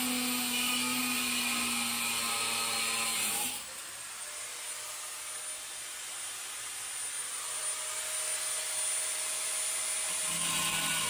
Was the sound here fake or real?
real